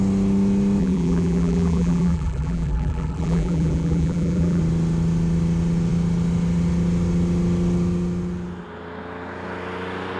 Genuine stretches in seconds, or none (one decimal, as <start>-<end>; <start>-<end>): 0.0-0.8; 4.6-10.2